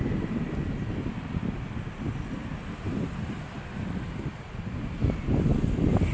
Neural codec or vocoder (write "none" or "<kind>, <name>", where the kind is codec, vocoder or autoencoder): none